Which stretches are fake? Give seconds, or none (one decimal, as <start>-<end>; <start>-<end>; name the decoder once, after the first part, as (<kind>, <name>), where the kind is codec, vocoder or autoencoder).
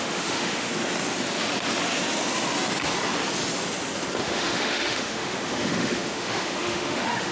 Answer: 0.0-0.7 (autoencoder, DAC-VAE); 4.2-7.3